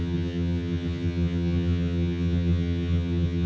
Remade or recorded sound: remade